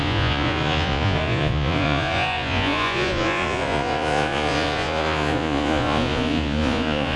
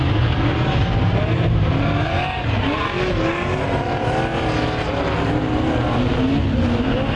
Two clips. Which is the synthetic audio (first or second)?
first